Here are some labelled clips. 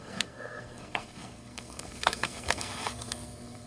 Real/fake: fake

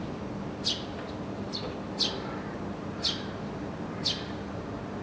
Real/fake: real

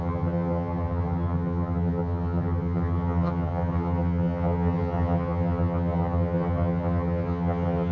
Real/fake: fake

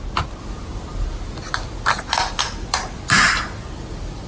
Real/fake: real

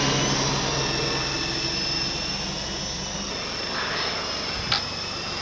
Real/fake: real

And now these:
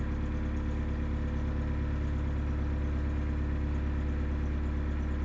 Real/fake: real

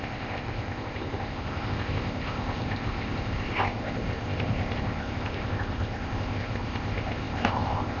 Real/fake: fake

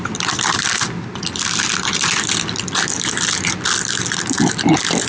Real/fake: real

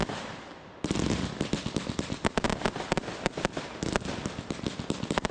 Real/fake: real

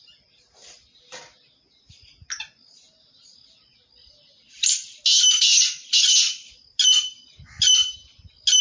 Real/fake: real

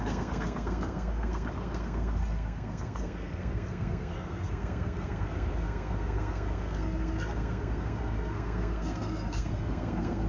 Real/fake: fake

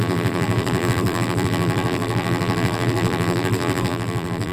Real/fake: fake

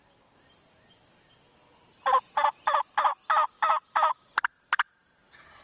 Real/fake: real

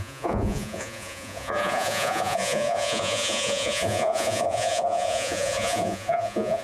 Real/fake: fake